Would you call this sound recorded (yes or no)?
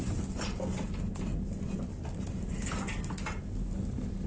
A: yes